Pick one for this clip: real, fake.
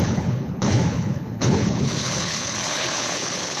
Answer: fake